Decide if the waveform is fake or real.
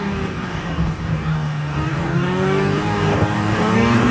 fake